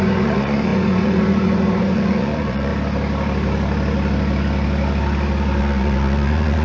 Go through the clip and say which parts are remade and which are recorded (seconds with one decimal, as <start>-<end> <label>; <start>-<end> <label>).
0.0-2.7 remade; 2.7-5.6 recorded; 5.6-6.6 remade

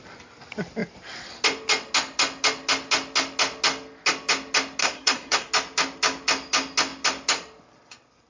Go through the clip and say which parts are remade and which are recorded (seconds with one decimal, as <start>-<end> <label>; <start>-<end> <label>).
0.0-4.8 recorded; 4.8-5.5 remade; 5.5-8.3 recorded

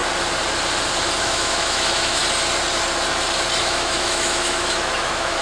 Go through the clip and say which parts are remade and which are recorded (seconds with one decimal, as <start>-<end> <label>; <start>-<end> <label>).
0.0-1.2 recorded; 1.2-2.2 remade; 2.2-3.6 recorded; 3.6-5.4 remade